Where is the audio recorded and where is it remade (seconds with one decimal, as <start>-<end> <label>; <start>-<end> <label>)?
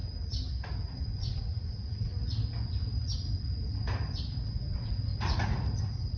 0.0-0.7 recorded; 0.7-2.1 remade; 2.1-4.5 recorded; 4.5-6.2 remade